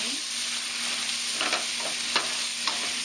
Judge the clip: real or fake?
real